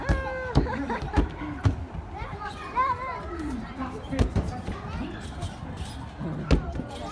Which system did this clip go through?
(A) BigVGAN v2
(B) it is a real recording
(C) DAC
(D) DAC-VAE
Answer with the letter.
B